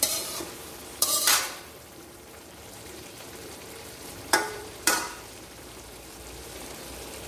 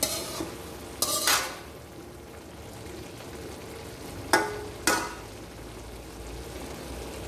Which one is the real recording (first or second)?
second